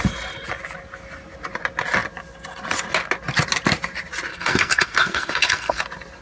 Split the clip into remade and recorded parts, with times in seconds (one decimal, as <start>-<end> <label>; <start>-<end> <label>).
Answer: 0.0-4.3 recorded; 4.3-5.8 remade; 5.8-6.2 recorded